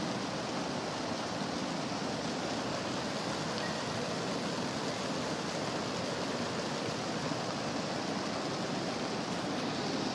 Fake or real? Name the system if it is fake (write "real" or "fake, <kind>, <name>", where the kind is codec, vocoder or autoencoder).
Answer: real